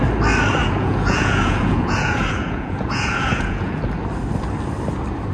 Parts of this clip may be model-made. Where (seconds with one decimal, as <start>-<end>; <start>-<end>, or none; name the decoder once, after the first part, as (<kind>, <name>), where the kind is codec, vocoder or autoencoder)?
0.6-3.8 (vocoder, Vocos)